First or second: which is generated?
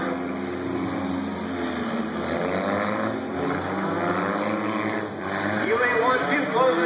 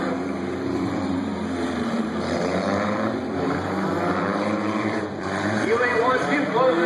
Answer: second